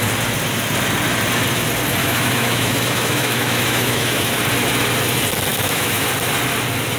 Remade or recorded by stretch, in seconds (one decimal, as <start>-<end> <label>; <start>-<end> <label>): 0.0-2.0 recorded; 2.0-4.3 remade; 4.3-5.5 recorded; 5.5-6.1 remade; 6.1-7.0 recorded